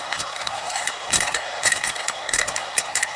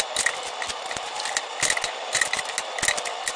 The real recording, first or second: second